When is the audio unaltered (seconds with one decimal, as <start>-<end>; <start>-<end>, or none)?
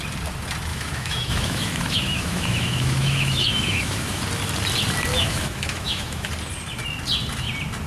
0.0-0.7; 4.2-5.1; 6.3-7.9